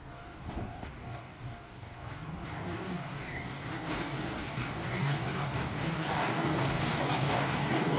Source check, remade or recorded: remade